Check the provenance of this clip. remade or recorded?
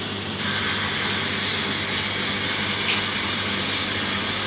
recorded